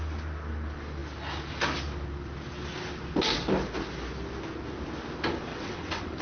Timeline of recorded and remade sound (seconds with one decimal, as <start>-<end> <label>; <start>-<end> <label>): 0.0-5.5 recorded; 5.5-6.2 remade